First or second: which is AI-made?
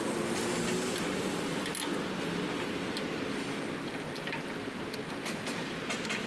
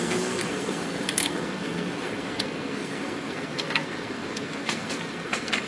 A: second